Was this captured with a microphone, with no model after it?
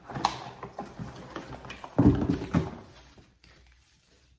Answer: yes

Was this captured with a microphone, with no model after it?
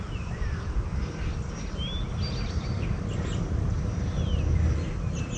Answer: yes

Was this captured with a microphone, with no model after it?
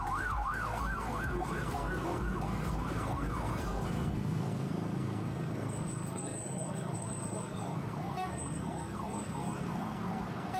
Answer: no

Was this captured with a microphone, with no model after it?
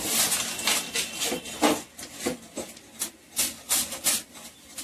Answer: yes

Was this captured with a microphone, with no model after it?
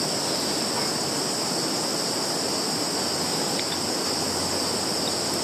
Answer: yes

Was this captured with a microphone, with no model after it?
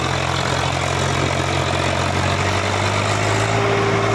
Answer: yes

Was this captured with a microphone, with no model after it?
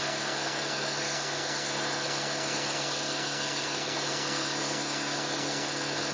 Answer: no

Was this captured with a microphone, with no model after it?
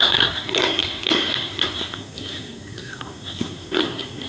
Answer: no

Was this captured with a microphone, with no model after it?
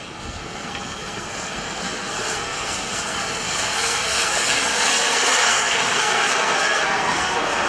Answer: no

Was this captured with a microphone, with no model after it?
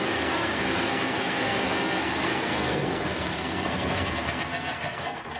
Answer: no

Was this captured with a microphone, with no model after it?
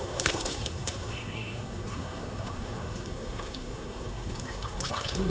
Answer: no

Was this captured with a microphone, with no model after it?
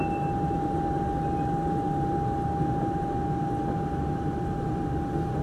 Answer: yes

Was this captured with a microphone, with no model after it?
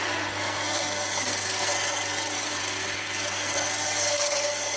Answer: no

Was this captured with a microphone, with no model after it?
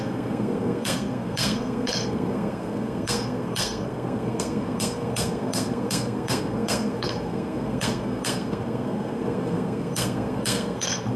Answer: no